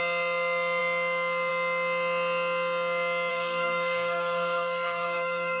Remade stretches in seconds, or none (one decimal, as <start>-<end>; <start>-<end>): 3.3-5.6